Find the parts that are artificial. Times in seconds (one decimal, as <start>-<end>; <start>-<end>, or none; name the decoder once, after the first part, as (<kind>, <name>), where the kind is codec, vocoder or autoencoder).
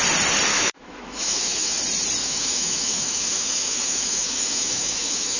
0.5-1.8 (autoencoder, DAC-VAE); 2.2-5.4